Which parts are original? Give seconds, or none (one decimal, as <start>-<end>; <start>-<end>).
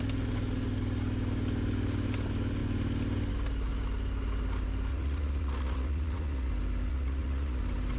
0.0-4.9; 6.5-6.9; 7.6-8.0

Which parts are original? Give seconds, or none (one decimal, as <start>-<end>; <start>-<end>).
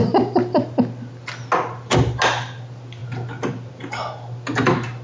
0.9-5.0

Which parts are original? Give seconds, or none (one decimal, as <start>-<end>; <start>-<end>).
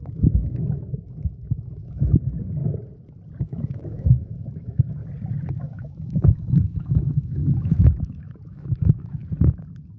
2.6-3.4; 5.0-5.5; 9.2-10.0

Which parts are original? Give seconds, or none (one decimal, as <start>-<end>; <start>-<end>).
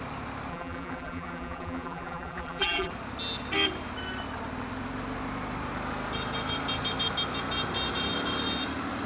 0.0-0.5; 2.9-9.1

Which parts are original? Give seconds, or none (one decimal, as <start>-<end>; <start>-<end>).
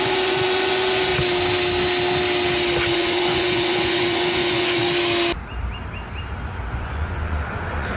1.1-2.9; 4.8-6.7